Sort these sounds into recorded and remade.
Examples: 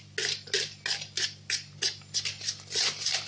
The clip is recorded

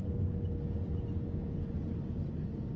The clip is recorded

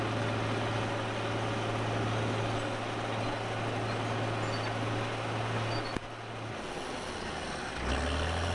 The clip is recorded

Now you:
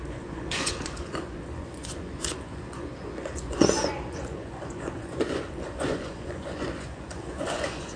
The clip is remade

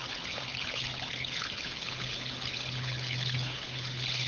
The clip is remade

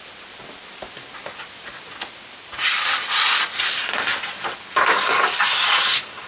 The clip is recorded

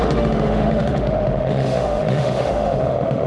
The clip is remade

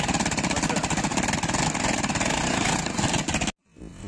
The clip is recorded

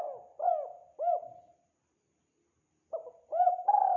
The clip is recorded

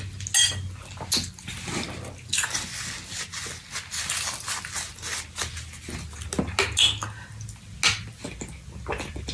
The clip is recorded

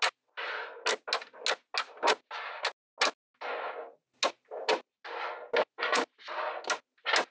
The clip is recorded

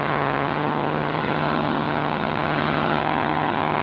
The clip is remade